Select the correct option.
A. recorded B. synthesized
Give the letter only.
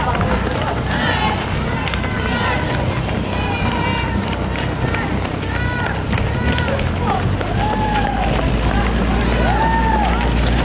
A